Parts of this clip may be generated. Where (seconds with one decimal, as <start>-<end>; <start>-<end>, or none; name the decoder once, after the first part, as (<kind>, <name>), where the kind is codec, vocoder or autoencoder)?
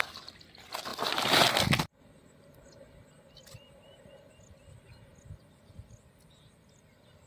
none